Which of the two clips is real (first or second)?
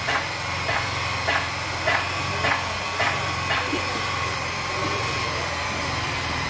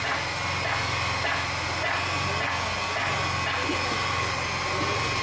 second